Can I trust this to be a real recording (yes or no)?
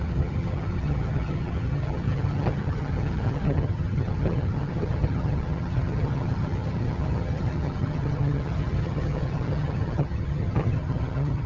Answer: no